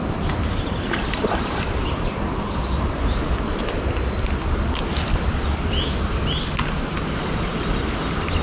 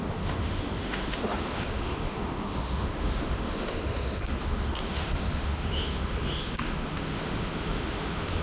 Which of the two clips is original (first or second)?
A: first